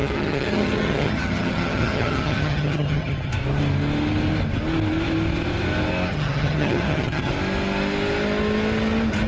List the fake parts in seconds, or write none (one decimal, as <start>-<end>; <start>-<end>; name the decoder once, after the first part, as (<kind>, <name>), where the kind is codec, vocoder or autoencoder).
0.0-3.3 (vocoder, HiFi-GAN); 6.1-7.3

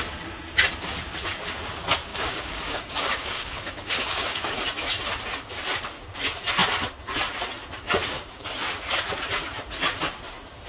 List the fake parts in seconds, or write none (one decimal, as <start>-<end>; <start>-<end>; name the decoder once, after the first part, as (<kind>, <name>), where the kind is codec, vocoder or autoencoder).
2.1-4.5 (codec, DAC); 8.0-8.5

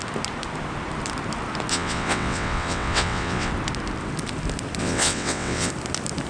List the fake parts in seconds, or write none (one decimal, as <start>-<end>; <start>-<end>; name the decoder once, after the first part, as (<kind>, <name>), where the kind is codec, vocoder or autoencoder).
1.7-3.5 (vocoder, WaveNeXt); 4.8-5.7

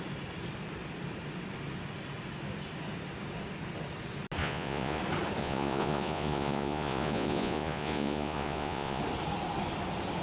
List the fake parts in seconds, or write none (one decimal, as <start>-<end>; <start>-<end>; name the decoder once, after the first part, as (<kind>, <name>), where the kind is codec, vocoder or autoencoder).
4.4-5.0 (vocoder, Vocos); 5.4-9.0